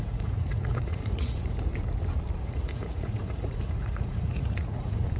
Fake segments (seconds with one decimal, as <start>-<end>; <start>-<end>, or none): 0.0-1.7; 2.4-5.2